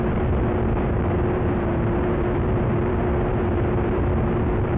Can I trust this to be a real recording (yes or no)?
no